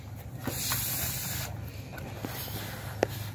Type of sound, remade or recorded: recorded